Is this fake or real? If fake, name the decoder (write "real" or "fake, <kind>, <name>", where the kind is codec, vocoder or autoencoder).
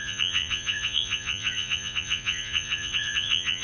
fake, vocoder, Vocos